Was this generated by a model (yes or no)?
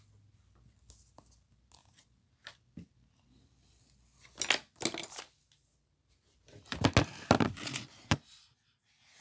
no